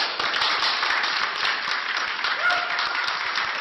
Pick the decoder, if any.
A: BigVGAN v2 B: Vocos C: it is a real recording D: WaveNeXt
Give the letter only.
C